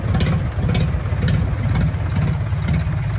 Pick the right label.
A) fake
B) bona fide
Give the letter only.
B